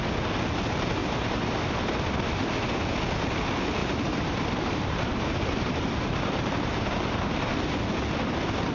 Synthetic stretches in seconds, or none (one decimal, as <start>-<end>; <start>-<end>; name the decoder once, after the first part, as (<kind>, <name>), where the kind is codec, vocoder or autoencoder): 1.0-1.5 (vocoder, BigVGAN v2); 3.8-7.4